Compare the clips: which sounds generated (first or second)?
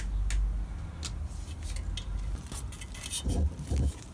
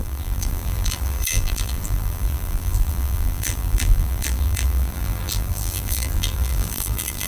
second